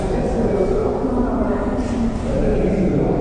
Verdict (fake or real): real